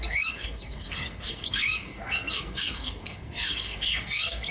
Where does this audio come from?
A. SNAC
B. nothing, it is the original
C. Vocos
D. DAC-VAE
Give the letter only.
A